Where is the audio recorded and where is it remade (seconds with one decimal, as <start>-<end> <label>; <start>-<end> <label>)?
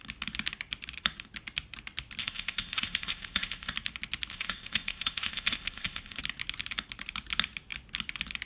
0.0-2.2 recorded; 2.2-3.7 remade; 3.7-4.3 recorded; 4.3-6.2 remade; 6.2-8.5 recorded